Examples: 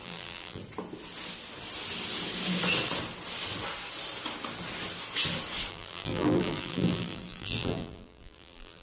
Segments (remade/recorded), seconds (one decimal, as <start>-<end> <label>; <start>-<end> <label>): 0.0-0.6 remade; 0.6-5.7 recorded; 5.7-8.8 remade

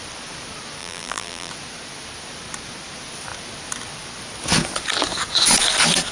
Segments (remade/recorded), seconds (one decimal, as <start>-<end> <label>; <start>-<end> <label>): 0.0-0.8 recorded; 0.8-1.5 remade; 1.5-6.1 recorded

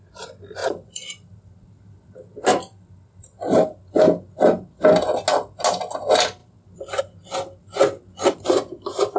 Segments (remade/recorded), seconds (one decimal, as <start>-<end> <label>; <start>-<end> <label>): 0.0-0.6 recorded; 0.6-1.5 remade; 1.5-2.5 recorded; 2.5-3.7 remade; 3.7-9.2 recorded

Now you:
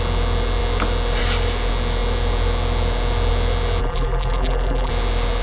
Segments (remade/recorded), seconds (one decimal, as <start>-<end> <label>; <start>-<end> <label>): 0.0-3.8 recorded; 3.8-4.9 remade; 4.9-5.4 recorded

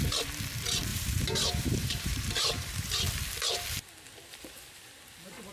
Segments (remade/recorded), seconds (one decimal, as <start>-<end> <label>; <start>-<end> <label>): 0.0-0.9 recorded; 0.9-3.2 remade; 3.2-5.5 recorded

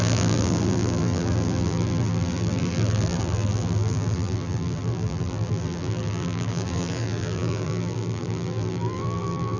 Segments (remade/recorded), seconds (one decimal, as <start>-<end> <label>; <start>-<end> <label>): 0.0-9.6 remade

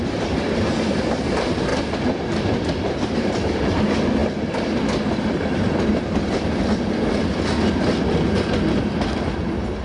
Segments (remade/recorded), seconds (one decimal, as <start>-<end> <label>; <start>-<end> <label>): 0.0-9.8 remade

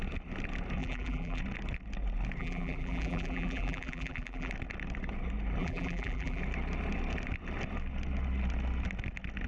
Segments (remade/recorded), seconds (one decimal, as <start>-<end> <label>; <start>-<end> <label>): 0.0-0.8 recorded; 0.8-1.4 remade; 1.4-2.4 recorded; 2.4-4.5 remade; 4.5-5.6 recorded; 5.6-6.4 remade; 6.4-9.5 recorded